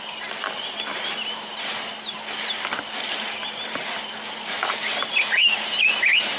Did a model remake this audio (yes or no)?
no